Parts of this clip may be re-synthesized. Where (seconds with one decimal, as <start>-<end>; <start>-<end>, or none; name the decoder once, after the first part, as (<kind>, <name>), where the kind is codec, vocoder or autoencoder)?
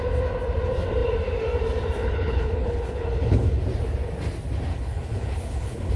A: 2.0-3.6 (codec, HILCodec); 4.7-6.0